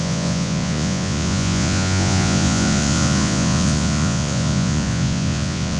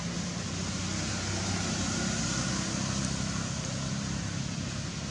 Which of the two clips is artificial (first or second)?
first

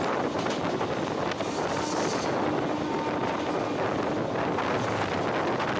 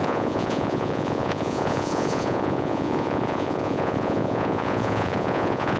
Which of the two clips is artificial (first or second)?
second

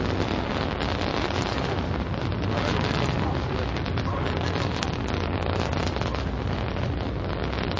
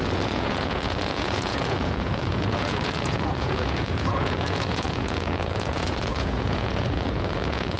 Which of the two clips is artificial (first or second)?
second